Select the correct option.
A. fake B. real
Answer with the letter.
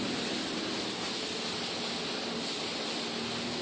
B